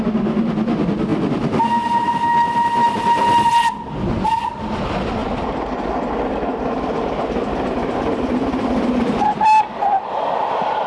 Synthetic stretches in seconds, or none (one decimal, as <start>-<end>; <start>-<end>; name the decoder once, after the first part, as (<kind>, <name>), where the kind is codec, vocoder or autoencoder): none